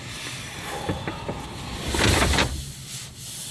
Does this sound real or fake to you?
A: real